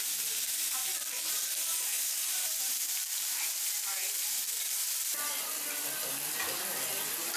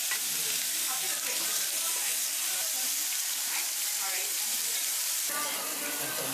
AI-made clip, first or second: second